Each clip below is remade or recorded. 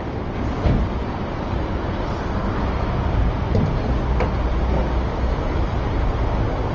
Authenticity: recorded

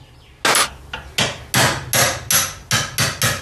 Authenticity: recorded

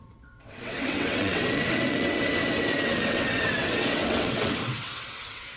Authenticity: remade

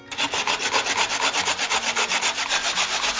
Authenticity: recorded